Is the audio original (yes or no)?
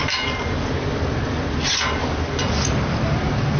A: yes